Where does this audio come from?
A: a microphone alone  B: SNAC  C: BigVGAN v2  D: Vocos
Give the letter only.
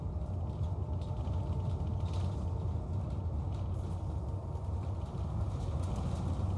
A